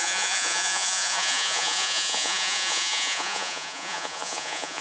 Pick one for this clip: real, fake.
fake